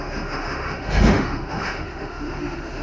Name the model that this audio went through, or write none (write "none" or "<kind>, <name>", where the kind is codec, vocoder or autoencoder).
autoencoder, DAC-VAE